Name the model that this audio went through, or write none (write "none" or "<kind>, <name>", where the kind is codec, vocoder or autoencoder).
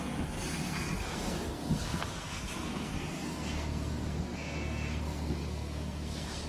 codec, SNAC